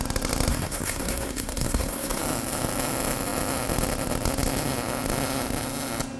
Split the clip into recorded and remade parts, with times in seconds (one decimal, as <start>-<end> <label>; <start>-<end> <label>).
0.0-0.5 recorded; 0.5-2.2 remade; 2.2-6.2 recorded